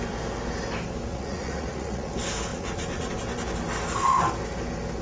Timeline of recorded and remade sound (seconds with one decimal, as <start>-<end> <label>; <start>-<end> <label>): 0.0-1.1 recorded; 1.1-2.1 remade; 2.1-2.5 recorded; 2.5-3.1 remade; 3.1-5.0 recorded